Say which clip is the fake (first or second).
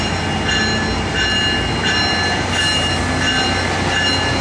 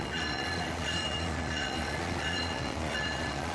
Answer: second